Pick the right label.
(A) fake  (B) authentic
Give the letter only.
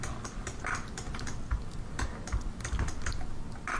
B